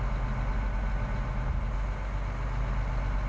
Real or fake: real